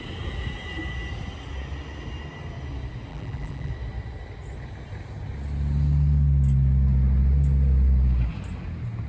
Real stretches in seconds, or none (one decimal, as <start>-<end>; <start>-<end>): 0.0-3.1; 3.7-9.1